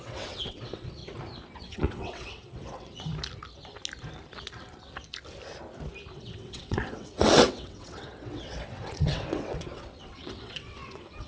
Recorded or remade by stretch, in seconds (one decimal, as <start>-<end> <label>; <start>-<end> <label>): 0.0-1.0 remade; 1.0-1.6 recorded; 1.6-3.1 remade; 3.1-6.1 recorded; 6.1-11.3 remade